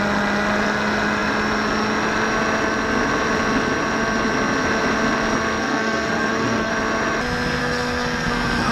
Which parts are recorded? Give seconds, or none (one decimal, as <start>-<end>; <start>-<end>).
0.0-5.6; 6.7-7.6